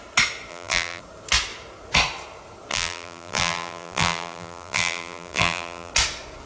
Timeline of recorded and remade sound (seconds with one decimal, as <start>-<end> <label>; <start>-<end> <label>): 0.0-0.5 recorded; 0.5-1.0 remade; 1.0-2.7 recorded; 2.7-5.9 remade; 5.9-6.5 recorded